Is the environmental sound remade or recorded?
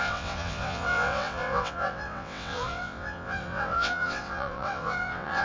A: remade